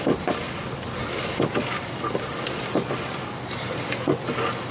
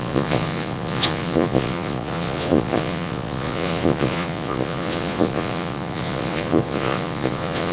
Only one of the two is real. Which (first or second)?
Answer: first